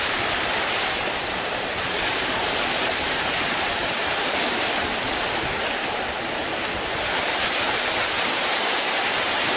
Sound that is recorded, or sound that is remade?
remade